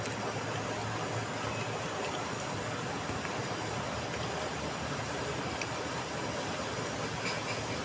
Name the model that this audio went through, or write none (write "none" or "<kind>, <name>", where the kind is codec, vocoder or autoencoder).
none